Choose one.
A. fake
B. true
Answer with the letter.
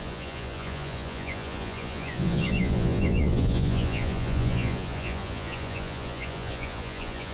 A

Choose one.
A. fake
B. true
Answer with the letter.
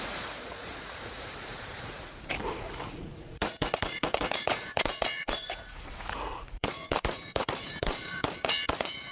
A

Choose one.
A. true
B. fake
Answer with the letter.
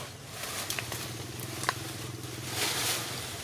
A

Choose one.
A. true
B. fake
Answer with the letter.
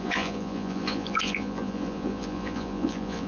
B